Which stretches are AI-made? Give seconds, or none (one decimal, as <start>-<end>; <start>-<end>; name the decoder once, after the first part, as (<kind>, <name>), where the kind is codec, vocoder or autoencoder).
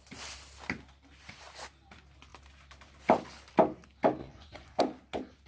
4.2-4.8 (vocoder, Vocos)